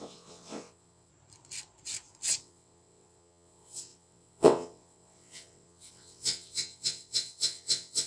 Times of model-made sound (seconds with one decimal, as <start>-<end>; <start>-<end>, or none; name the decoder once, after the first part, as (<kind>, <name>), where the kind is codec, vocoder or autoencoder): 0.0-1.1 (vocoder, WaveNeXt); 2.4-8.1